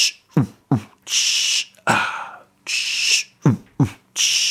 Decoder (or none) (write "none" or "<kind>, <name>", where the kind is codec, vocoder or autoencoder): vocoder, BigVGAN v2